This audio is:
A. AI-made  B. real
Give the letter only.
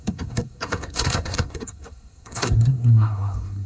A